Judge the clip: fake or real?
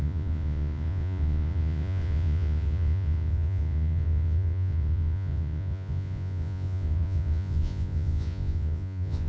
fake